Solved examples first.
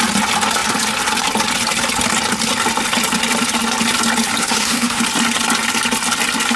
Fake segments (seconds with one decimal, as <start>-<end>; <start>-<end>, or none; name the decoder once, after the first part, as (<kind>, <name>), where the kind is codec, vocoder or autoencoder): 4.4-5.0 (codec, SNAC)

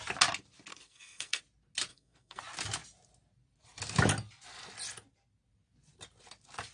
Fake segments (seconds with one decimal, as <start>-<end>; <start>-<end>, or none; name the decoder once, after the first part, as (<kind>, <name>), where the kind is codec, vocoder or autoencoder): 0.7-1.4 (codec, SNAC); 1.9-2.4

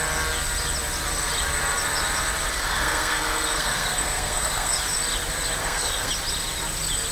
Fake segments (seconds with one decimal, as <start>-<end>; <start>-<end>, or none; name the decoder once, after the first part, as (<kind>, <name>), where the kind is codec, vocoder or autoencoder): 2.5-4.8 (codec, SNAC); 5.6-6.1

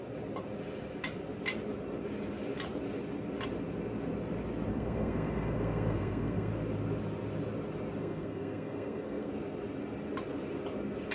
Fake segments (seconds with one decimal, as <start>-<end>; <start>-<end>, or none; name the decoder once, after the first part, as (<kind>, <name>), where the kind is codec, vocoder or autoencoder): 4.7-6.5 (codec, SNAC); 8.0-9.3